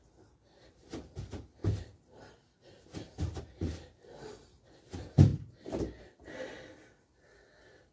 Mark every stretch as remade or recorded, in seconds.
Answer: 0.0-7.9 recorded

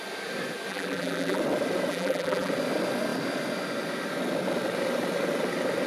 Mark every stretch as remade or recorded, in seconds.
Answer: 0.0-0.7 recorded; 0.7-1.4 remade; 1.4-1.9 recorded; 1.9-2.5 remade; 2.5-5.9 recorded

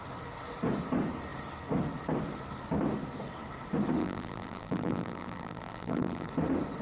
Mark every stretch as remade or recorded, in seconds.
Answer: 0.0-4.0 recorded; 4.0-6.3 remade; 6.3-6.8 recorded

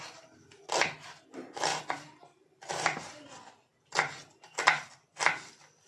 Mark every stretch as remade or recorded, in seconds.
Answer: 0.0-5.9 recorded

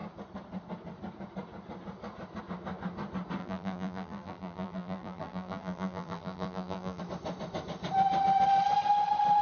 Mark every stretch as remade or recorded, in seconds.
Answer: 0.0-3.4 recorded; 3.4-7.0 remade; 7.0-9.4 recorded

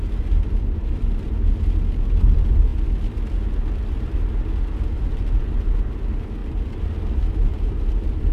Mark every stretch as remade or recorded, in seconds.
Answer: 0.0-6.4 recorded; 6.4-8.3 remade